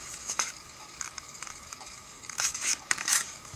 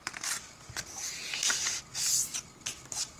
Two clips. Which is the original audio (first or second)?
second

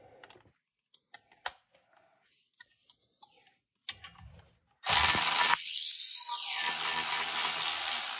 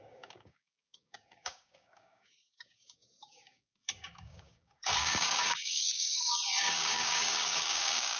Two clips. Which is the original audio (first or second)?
first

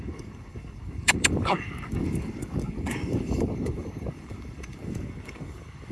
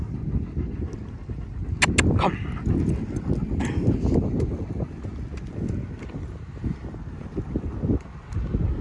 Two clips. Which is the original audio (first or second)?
second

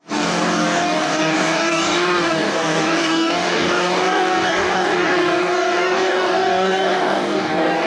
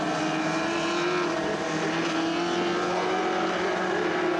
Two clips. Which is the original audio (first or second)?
second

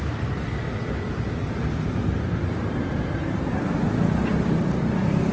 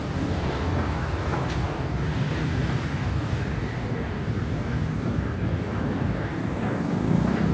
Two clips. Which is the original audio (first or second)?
first